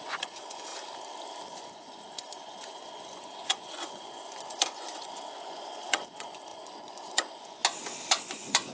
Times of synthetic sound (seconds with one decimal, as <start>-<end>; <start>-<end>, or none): 0.0-0.7; 1.5-7.6; 8.1-8.7